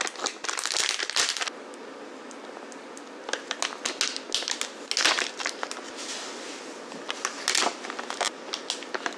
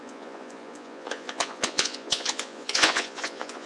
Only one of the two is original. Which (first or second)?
first